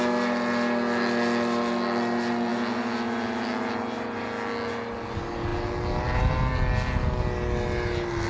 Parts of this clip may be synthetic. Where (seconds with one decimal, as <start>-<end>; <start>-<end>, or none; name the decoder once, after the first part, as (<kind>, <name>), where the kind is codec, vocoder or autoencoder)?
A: none